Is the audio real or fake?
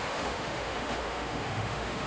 fake